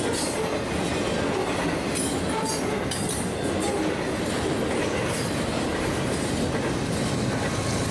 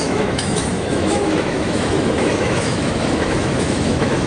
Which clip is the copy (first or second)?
second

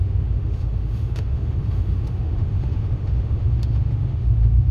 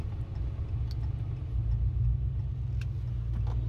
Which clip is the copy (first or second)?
first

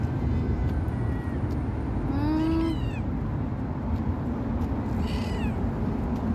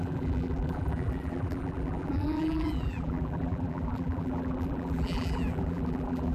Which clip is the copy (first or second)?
second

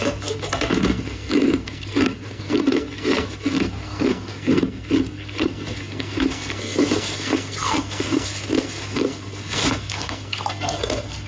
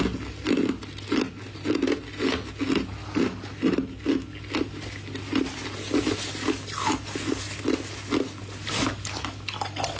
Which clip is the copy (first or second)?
first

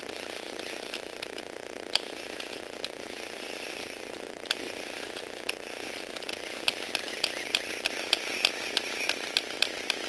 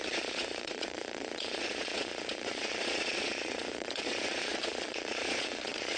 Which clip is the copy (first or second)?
second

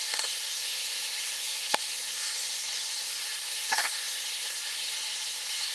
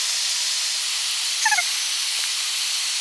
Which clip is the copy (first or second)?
first